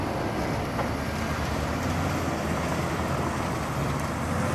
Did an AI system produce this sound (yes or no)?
no